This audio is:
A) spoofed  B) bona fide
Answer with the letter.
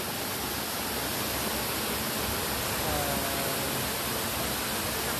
B